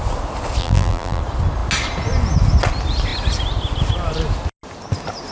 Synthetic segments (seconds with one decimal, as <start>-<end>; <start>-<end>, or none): 0.6-1.2